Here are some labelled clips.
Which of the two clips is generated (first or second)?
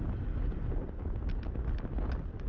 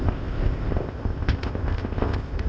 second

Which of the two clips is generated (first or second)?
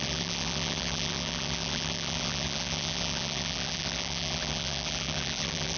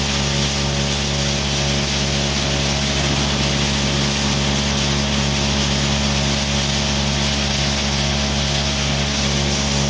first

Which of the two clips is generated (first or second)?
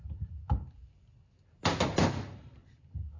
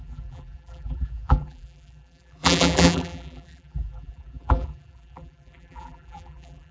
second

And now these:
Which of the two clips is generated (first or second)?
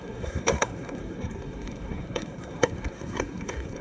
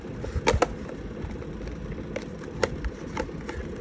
first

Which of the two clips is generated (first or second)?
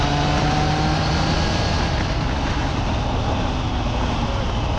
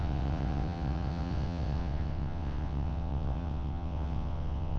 second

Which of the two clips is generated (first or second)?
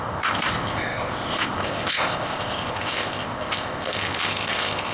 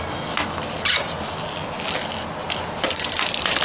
first